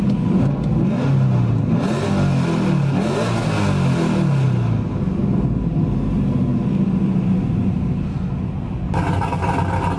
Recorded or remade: recorded